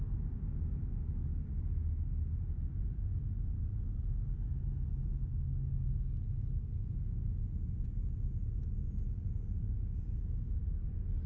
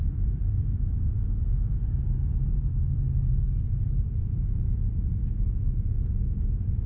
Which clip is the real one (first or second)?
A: first